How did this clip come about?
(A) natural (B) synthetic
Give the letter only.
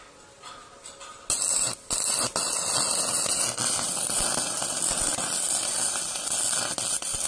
A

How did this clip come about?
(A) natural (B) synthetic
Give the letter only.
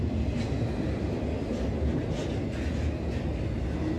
A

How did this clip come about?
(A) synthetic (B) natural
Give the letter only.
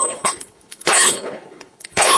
A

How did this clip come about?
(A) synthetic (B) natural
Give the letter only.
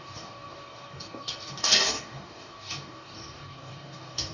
A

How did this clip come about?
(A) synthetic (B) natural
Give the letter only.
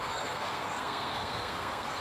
A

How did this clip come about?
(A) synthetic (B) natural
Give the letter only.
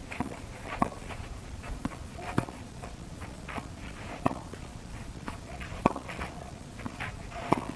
A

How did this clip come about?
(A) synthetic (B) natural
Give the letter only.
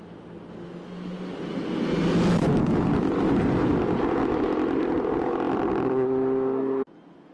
B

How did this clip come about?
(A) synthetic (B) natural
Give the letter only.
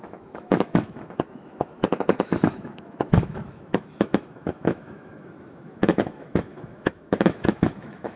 A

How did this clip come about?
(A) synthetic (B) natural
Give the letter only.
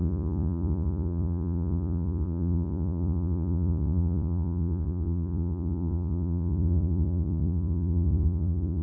A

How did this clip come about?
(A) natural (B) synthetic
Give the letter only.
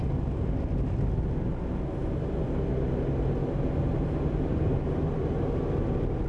A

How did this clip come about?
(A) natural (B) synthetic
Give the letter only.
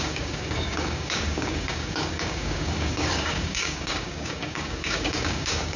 B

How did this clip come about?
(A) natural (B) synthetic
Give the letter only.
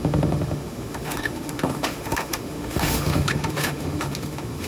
B